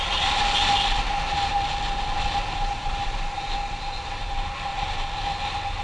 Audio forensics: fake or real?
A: real